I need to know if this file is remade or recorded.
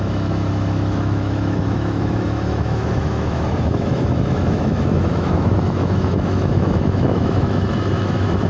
remade